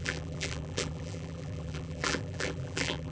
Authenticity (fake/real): fake